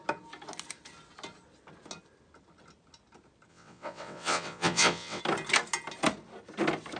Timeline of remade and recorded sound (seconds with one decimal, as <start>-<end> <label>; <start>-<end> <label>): 0.0-3.5 recorded; 3.5-5.2 remade; 5.2-7.0 recorded